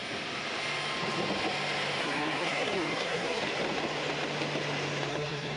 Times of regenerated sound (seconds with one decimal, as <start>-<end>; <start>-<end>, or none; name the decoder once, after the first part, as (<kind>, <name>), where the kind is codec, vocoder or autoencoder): 2.0-3.4 (codec, SNAC); 5.1-5.6